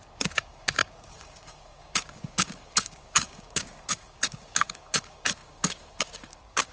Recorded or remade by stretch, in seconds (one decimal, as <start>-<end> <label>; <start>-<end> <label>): 0.0-6.7 remade